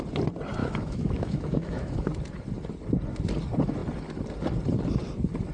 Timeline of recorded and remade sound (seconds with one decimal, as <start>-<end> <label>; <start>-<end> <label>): 0.0-0.6 recorded; 0.6-2.1 remade; 2.1-5.5 recorded